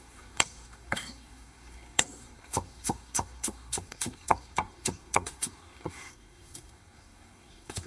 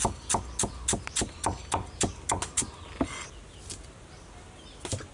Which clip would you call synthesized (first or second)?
first